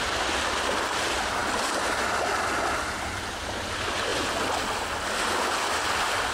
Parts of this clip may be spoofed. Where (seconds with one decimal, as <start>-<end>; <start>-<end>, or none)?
none